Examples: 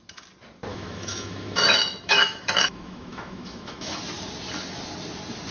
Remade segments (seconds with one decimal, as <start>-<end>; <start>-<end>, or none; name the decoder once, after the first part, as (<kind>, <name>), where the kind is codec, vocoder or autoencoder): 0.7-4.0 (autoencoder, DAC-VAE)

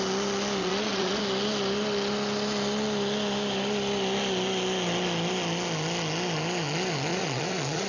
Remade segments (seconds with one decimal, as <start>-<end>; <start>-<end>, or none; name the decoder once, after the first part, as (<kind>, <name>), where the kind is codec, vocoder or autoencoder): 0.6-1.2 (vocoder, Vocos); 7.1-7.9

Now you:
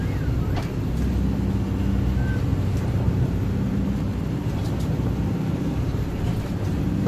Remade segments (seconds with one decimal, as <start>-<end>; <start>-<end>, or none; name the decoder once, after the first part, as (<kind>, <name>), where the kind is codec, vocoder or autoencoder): 2.5-5.7 (vocoder, BigVGAN v2)

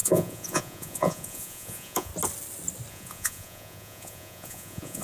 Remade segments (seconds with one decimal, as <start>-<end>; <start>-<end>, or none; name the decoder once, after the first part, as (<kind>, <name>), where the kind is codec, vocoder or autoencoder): 0.0-2.1 (vocoder, Vocos); 2.9-5.0

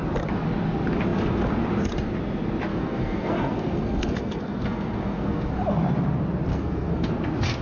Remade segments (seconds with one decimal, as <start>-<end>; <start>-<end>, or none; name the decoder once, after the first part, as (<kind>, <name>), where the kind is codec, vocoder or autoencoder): 2.7-5.5 (codec, SNAC); 6.5-7.1